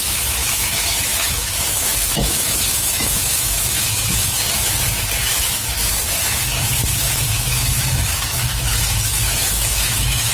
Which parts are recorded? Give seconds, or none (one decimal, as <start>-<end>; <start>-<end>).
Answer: none